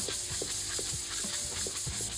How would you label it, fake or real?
real